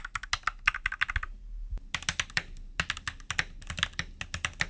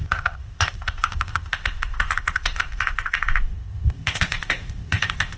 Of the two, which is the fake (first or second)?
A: second